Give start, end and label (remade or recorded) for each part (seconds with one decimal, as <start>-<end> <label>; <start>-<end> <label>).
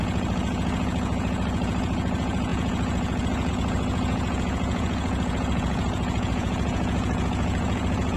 0.0-8.2 remade